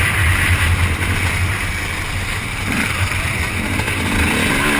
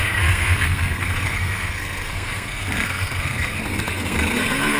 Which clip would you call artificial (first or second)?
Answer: second